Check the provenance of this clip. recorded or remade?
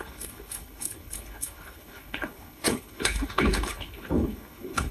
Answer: remade